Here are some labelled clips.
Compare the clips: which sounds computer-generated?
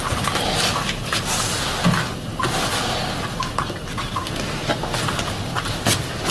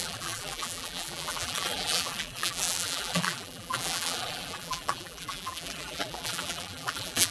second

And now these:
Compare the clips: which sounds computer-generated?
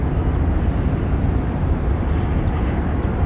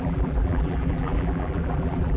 second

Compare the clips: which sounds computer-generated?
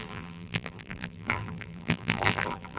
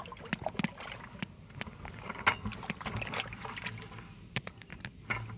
first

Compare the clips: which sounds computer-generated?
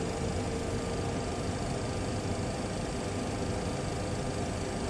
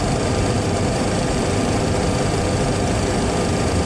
second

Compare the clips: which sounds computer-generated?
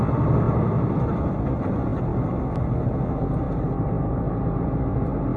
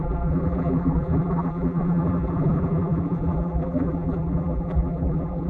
second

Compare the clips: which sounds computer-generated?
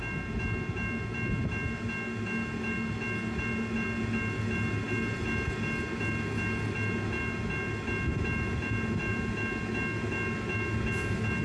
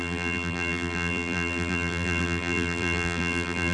second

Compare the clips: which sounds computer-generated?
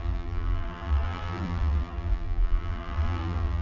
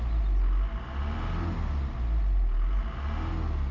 first